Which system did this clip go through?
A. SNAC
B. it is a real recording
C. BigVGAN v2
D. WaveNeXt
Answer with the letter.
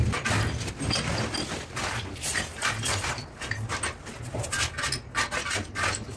B